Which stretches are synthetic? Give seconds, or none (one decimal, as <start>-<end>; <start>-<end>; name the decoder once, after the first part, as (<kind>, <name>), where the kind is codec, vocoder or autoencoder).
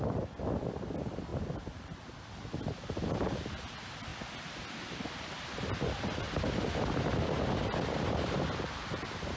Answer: none